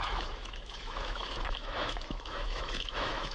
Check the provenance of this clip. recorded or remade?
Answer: remade